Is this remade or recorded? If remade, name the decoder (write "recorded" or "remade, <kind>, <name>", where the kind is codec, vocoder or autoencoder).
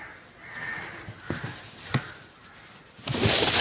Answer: recorded